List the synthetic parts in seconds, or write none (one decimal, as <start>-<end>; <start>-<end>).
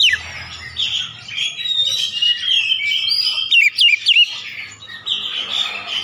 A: 1.8-3.8